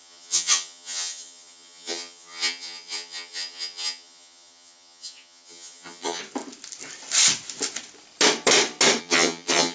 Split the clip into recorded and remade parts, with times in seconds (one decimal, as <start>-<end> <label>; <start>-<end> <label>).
0.0-6.2 remade; 6.2-9.0 recorded; 9.0-9.7 remade